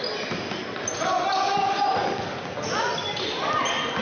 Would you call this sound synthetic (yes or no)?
no